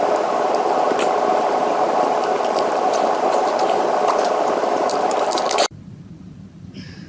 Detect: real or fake fake